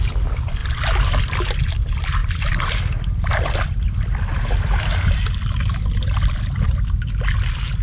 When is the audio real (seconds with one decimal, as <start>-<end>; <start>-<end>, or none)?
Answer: 0.0-7.8